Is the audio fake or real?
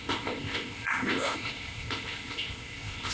fake